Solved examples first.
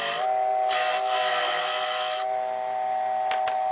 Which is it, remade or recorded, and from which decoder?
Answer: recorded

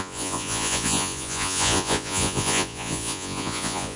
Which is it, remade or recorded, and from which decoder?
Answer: remade, vocoder, Vocos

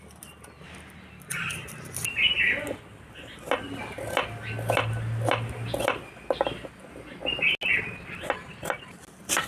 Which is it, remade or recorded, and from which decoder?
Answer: recorded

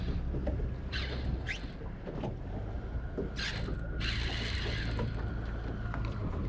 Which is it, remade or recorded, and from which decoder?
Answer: recorded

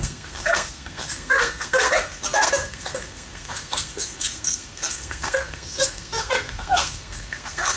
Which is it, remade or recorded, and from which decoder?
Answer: remade, codec, SNAC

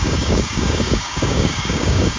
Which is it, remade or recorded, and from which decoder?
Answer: remade, codec, DAC